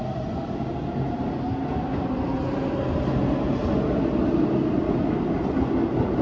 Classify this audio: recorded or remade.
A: recorded